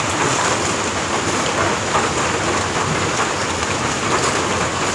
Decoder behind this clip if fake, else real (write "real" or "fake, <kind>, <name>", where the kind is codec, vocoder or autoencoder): real